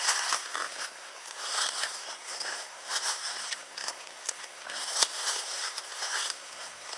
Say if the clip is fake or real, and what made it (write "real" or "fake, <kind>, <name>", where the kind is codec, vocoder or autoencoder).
fake, codec, SNAC